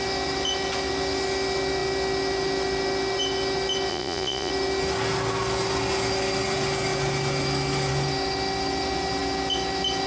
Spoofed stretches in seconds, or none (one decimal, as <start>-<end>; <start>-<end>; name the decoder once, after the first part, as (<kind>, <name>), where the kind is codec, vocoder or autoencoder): 3.9-4.5 (vocoder, Vocos)